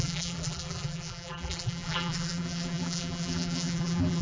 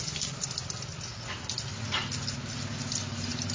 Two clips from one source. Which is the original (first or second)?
second